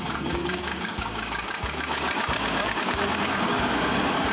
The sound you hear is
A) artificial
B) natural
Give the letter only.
A